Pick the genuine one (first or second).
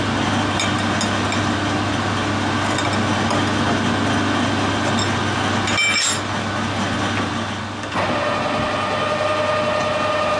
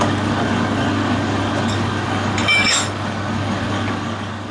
first